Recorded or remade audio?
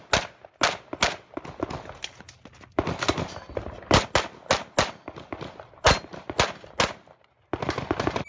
recorded